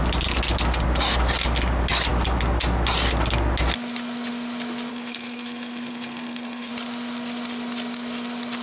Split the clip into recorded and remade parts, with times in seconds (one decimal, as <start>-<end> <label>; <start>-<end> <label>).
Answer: 0.0-4.9 recorded; 4.9-6.7 remade; 6.7-8.6 recorded